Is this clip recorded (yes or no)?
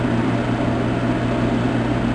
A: yes